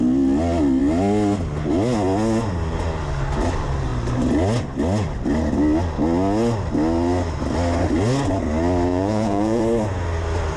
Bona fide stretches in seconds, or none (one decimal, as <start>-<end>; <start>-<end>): 0.0-8.9; 9.6-10.6